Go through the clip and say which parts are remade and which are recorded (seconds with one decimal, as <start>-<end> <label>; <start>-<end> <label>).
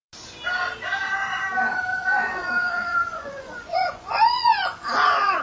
0.0-1.9 recorded; 1.9-5.4 remade